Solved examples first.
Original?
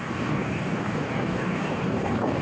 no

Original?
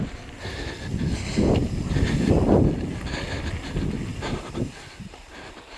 yes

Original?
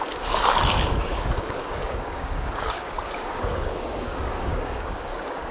no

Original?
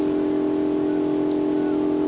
yes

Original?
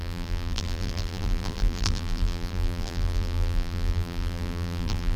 no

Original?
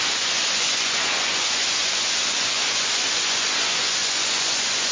no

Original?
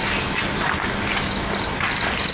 yes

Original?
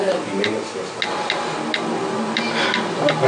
yes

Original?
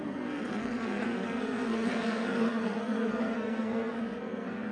no